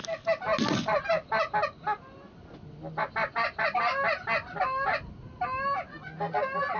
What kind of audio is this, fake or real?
real